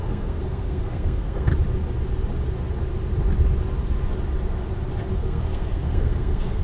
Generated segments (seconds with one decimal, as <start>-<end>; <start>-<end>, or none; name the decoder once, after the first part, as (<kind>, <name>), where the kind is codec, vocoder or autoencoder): 0.0-1.5 (codec, SNAC); 5.1-6.6